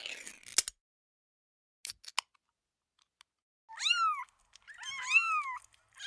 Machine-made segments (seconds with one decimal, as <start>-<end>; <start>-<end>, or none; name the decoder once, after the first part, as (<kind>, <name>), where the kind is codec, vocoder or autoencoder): none